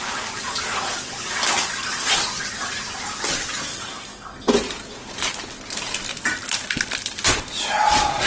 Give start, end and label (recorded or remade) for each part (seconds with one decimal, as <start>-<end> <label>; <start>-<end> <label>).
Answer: 0.0-3.7 recorded; 3.7-4.5 remade; 4.5-8.3 recorded